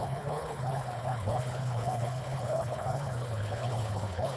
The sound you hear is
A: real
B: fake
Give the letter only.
B